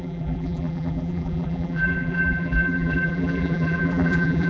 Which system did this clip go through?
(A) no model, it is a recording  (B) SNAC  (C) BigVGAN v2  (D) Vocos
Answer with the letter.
C